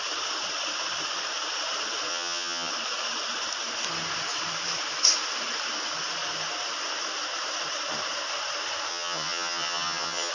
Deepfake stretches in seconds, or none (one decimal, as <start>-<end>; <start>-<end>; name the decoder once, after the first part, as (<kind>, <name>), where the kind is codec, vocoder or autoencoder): 2.1-2.7 (vocoder, HiFi-GAN); 8.9-10.3